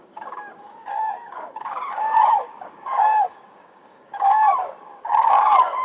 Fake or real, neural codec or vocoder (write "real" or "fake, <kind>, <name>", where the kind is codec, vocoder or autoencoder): fake, codec, DAC